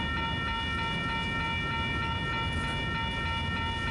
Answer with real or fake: real